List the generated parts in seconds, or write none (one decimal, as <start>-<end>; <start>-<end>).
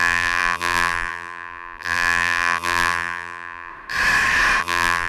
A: 0.0-3.7; 4.6-5.1